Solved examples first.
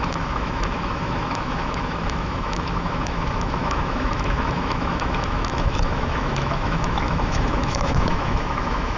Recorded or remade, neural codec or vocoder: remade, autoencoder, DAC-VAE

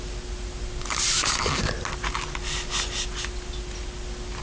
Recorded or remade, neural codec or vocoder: recorded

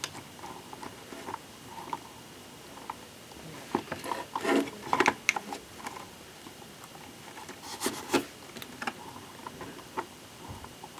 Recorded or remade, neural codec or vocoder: recorded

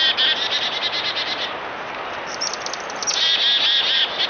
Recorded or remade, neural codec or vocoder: recorded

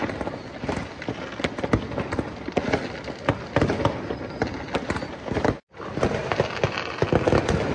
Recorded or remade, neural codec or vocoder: recorded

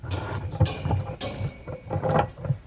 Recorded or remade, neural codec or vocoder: recorded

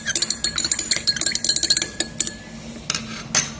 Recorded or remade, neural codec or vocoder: recorded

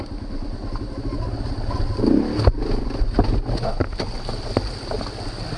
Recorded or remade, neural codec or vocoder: recorded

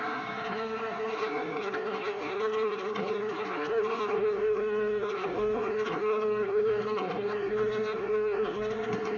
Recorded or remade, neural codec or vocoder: remade, codec, SNAC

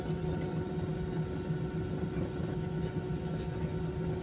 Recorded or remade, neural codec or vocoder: recorded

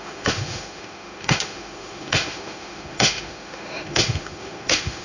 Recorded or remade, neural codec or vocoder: remade, autoencoder, DAC-VAE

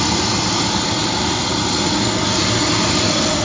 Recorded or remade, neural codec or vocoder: recorded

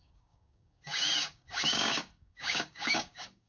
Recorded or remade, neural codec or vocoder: remade, codec, DAC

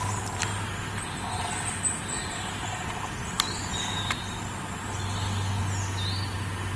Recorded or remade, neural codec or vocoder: recorded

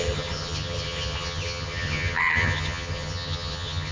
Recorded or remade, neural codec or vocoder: remade, vocoder, HiFi-GAN